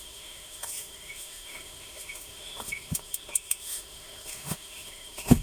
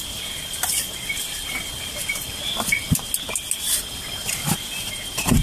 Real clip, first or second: second